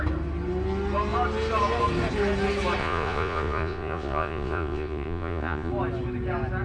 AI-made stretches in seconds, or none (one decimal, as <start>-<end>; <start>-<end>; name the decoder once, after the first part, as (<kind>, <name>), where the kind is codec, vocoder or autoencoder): 2.8-5.7 (vocoder, Vocos)